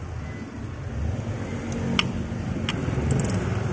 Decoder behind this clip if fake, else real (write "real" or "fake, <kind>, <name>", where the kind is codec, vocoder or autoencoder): real